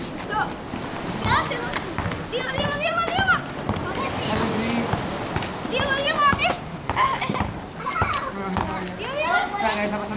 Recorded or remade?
recorded